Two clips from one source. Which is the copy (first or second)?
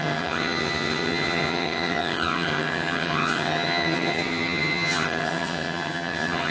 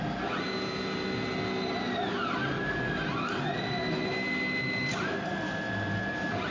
first